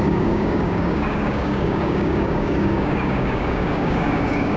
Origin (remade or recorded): remade